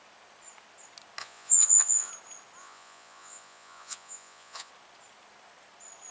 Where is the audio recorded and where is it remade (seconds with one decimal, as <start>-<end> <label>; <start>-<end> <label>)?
0.0-1.2 recorded; 1.2-2.1 remade; 2.1-2.6 recorded; 2.6-4.7 remade; 4.7-6.1 recorded

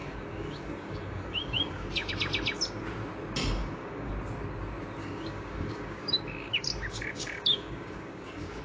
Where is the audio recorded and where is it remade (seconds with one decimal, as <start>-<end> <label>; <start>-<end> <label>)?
0.0-2.1 remade; 2.1-3.6 recorded; 3.6-4.1 remade; 4.1-5.0 recorded; 5.0-8.6 remade